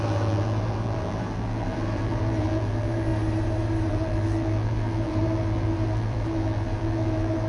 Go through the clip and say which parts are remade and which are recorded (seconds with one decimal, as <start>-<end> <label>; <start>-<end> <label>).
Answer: 0.0-3.1 remade; 3.1-3.9 recorded; 3.9-7.5 remade